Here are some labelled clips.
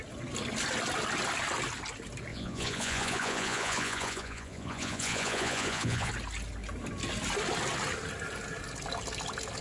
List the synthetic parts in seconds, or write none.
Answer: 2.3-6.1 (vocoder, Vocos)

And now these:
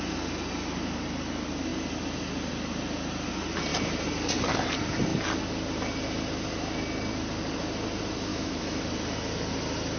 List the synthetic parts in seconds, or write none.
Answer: 8.3-8.8 (autoencoder, DAC-VAE)

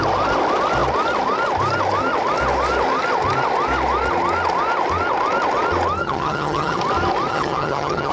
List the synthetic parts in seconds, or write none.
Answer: 6.0-6.8 (vocoder, HiFi-GAN); 7.3-8.1

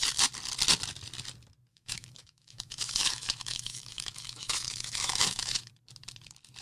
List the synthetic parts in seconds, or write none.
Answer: 1.7-5.7 (autoencoder, DAC-VAE)